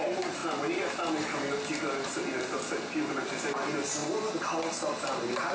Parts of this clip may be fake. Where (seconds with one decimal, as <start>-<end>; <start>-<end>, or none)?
none